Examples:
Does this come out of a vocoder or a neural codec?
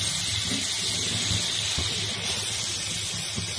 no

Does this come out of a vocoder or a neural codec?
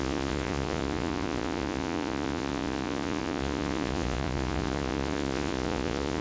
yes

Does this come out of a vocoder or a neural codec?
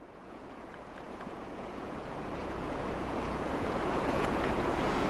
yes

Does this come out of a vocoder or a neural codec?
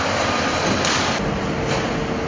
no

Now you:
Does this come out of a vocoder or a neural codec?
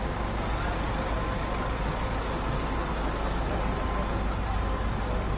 no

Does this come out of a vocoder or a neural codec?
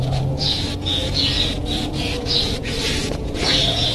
yes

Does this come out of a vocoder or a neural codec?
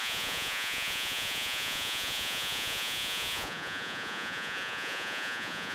yes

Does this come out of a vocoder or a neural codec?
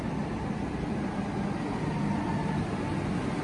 no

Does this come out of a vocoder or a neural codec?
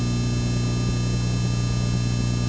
no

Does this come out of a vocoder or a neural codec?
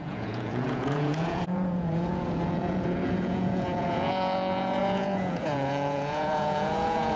yes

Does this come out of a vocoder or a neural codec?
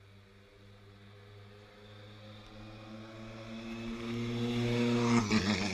no